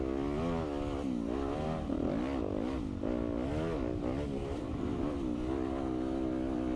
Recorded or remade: recorded